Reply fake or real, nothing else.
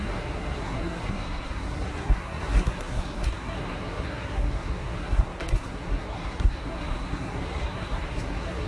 fake